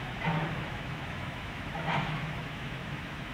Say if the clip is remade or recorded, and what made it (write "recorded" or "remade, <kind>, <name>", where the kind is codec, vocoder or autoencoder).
remade, autoencoder, DAC-VAE